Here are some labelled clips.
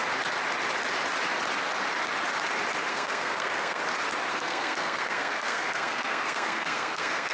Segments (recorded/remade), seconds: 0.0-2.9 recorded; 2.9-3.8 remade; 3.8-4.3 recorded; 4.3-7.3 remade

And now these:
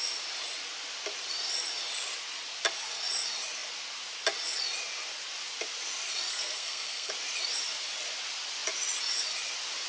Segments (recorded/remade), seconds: 0.0-6.3 recorded; 6.3-7.1 remade; 7.1-9.9 recorded

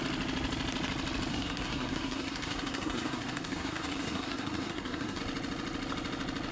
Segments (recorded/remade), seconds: 0.0-1.3 recorded; 1.3-5.2 remade; 5.2-6.5 recorded